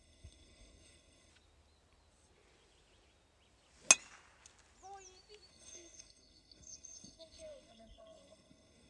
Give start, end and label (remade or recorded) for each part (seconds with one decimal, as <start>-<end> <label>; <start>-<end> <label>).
0.0-1.3 remade; 1.3-5.5 recorded; 5.5-8.9 remade

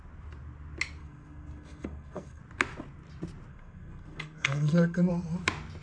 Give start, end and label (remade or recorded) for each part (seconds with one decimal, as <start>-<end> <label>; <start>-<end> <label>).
0.0-1.0 recorded; 1.0-2.4 remade; 2.4-3.5 recorded; 3.5-5.1 remade; 5.1-5.8 recorded

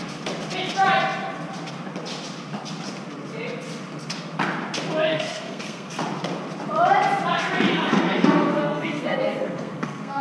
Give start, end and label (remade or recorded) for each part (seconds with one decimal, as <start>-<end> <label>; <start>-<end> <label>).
0.0-5.1 recorded; 5.1-5.9 remade; 5.9-7.7 recorded; 7.7-10.2 remade

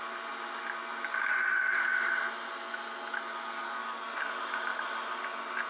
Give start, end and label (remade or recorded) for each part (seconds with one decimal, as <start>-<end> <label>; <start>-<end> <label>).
0.0-5.7 recorded

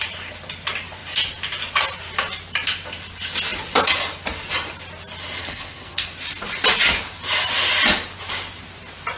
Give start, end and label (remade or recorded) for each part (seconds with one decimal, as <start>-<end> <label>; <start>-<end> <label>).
0.0-5.4 recorded; 5.4-6.1 remade; 6.1-9.2 recorded

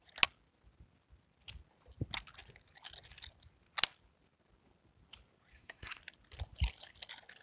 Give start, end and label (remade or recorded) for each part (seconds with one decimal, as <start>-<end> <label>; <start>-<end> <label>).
0.0-5.5 recorded; 5.5-6.0 remade; 6.0-7.4 recorded

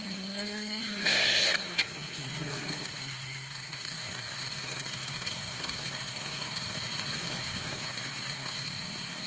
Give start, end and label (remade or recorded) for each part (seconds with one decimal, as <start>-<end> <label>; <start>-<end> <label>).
0.0-9.3 remade

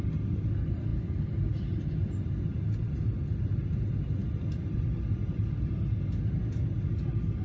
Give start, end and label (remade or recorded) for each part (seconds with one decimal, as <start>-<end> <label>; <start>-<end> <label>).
0.0-7.4 recorded